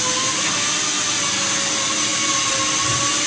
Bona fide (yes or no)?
yes